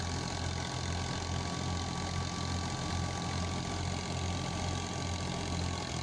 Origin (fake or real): real